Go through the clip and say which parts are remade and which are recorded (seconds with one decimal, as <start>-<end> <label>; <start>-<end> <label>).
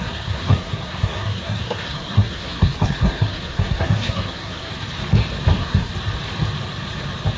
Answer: 0.0-4.7 remade; 4.7-5.5 recorded; 5.5-5.9 remade; 5.9-7.4 recorded